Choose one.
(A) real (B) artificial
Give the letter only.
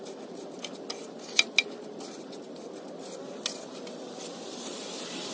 A